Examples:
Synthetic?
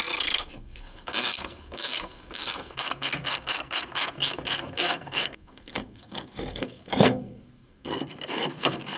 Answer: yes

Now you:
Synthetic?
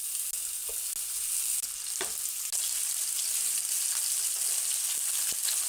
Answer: no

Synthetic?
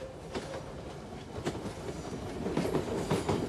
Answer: no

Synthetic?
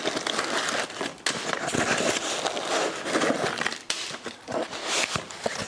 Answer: no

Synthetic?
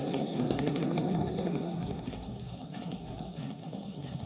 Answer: yes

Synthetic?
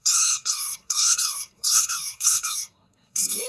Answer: yes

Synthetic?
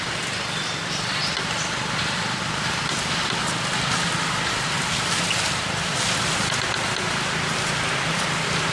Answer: no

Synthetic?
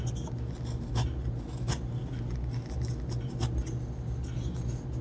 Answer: no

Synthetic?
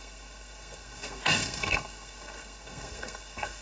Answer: yes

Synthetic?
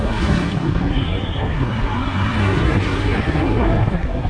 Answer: yes